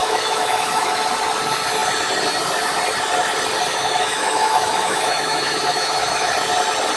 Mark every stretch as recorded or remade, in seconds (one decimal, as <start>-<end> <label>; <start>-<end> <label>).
0.0-1.0 remade; 1.0-3.7 recorded; 3.7-6.3 remade; 6.3-7.0 recorded